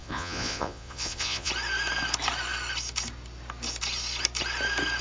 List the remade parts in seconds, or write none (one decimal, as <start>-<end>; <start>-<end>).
0.0-1.5